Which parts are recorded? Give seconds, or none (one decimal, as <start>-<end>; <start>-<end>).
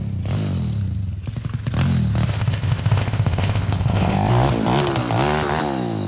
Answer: 0.0-2.3; 4.3-6.1